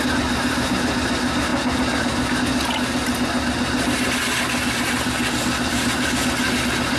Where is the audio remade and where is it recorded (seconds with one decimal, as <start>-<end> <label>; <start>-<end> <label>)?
0.0-7.0 recorded

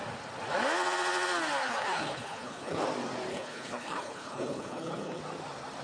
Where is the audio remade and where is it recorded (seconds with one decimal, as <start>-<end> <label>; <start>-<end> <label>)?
0.0-1.6 recorded; 1.6-2.8 remade; 2.8-3.3 recorded; 3.3-5.2 remade; 5.2-5.8 recorded

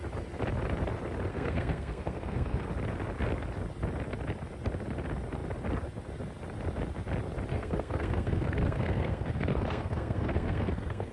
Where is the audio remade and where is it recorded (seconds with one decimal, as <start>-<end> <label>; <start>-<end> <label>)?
0.0-1.3 recorded; 1.3-2.7 remade; 2.7-7.5 recorded; 7.5-11.1 remade

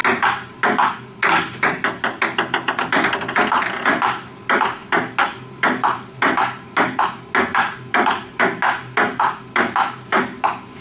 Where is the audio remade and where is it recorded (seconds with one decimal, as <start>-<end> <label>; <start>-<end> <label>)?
0.0-10.8 recorded

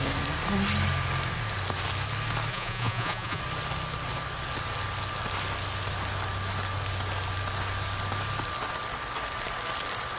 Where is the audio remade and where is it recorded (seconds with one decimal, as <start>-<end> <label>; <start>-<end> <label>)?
0.0-2.5 recorded; 2.5-3.4 remade; 3.4-10.2 recorded

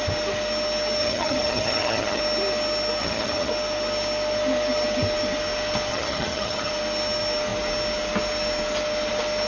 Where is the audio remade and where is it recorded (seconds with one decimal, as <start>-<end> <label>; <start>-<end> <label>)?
0.0-1.0 recorded; 1.0-2.2 remade; 2.2-3.0 recorded; 3.0-3.5 remade; 3.5-5.9 recorded; 5.9-6.7 remade; 6.7-9.5 recorded

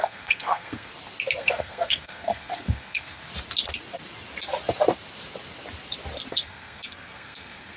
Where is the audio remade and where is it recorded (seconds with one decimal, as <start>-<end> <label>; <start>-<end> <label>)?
0.0-0.9 remade; 0.9-1.4 recorded; 1.4-3.3 remade; 3.3-6.3 recorded; 6.3-7.8 remade

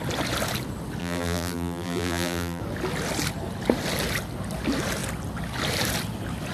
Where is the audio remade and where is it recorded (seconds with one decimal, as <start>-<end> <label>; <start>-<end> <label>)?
0.0-1.0 recorded; 1.0-2.6 remade; 2.6-6.5 recorded